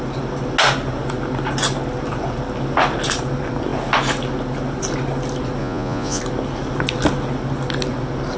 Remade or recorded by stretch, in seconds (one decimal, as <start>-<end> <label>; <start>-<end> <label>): 0.0-5.6 recorded; 5.6-6.2 remade; 6.2-8.4 recorded